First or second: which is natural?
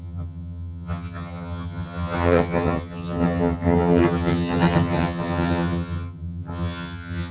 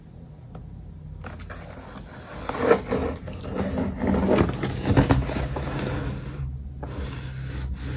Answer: second